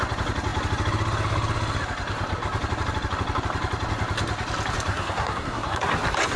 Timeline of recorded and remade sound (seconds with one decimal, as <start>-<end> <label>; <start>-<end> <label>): 0.0-4.9 recorded; 4.9-5.9 remade; 5.9-6.4 recorded